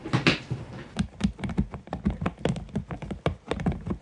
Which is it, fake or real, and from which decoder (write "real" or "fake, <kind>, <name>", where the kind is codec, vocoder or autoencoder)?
real